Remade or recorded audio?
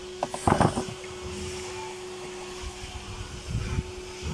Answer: recorded